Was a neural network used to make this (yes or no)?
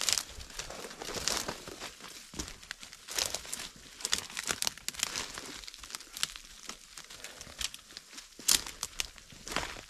no